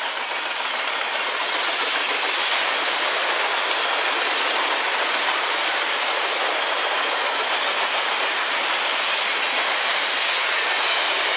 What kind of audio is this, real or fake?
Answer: real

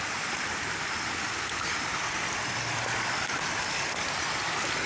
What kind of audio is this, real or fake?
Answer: real